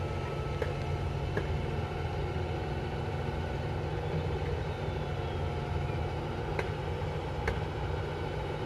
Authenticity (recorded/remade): recorded